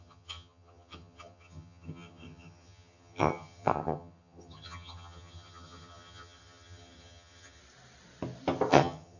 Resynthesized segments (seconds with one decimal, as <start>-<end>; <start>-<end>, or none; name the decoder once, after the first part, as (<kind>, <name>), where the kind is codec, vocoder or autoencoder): 0.0-7.6 (vocoder, HiFi-GAN); 8.7-9.2